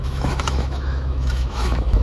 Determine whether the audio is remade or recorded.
remade